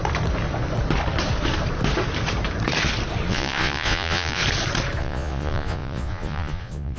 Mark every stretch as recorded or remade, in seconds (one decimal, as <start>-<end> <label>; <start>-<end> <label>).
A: 0.0-3.3 recorded; 3.3-4.4 remade; 4.4-5.0 recorded; 5.0-7.0 remade